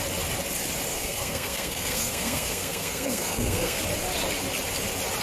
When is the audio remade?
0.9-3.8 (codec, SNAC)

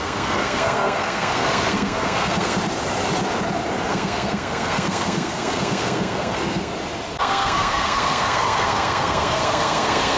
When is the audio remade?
0.0-2.6 (codec, SNAC); 3.9-6.7; 7.2-10.2

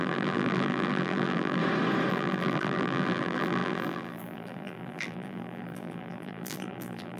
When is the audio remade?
0.0-1.6 (vocoder, BigVGAN v2); 2.1-7.2

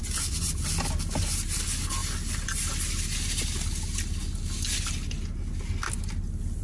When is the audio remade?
none

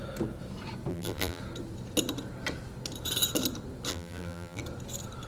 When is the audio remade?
0.9-1.4 (vocoder, BigVGAN v2); 3.9-4.6